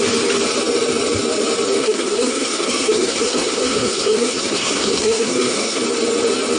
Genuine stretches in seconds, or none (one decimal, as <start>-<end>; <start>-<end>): 0.0-1.8; 5.8-6.6